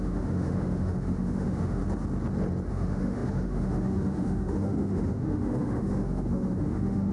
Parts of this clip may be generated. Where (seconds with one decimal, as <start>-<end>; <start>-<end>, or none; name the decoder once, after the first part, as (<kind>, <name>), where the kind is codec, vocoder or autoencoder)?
0.0-1.8 (autoencoder, DAC-VAE); 2.7-7.1